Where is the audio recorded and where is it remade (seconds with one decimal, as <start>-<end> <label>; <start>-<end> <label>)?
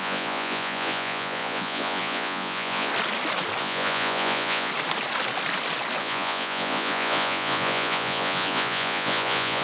0.0-2.9 remade; 2.9-3.6 recorded; 3.6-4.7 remade; 4.7-6.0 recorded; 6.0-9.6 remade